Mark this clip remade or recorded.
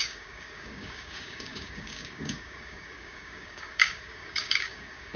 remade